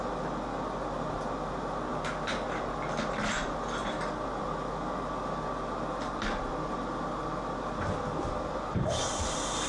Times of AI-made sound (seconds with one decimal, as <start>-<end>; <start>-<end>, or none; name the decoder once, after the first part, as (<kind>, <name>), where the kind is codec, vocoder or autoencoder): none